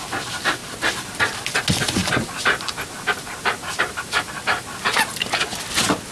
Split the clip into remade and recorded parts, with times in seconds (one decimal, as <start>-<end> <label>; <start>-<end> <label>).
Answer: 0.0-2.0 recorded; 2.0-5.1 remade; 5.1-6.1 recorded